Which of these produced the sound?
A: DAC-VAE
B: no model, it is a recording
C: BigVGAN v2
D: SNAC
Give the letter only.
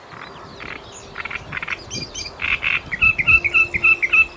B